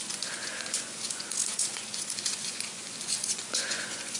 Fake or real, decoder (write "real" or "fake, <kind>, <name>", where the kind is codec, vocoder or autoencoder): fake, vocoder, Vocos